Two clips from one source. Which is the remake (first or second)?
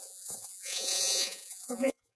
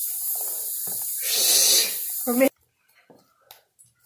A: first